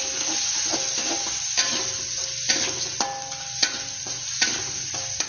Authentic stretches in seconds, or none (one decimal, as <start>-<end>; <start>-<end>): 0.0-5.3